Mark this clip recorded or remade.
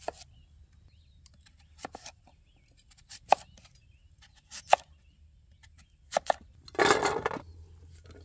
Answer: recorded